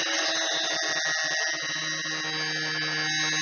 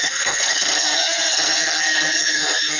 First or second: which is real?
first